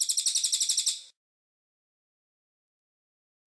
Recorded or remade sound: recorded